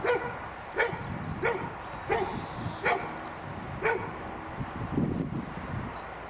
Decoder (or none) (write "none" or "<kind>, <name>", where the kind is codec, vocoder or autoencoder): none